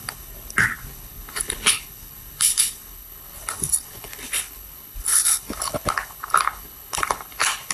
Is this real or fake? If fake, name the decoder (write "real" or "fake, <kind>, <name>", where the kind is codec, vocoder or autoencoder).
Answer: fake, codec, HILCodec